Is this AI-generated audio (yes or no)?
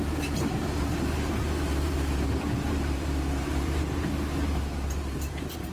yes